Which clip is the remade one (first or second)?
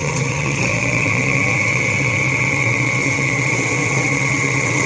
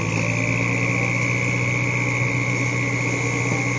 first